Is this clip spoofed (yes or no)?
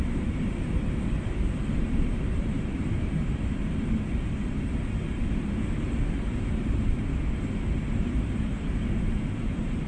yes